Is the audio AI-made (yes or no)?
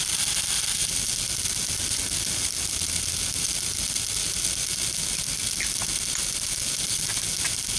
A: no